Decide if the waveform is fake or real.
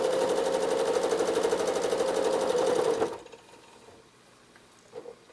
real